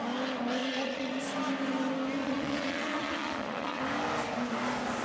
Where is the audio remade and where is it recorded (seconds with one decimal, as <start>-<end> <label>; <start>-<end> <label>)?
0.0-0.6 recorded; 0.6-1.2 remade; 1.2-2.2 recorded; 2.2-3.8 remade; 3.8-5.0 recorded